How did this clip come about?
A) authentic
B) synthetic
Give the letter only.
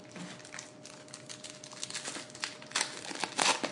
A